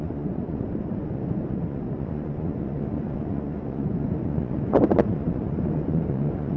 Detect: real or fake fake